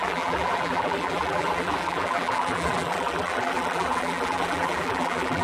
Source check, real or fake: fake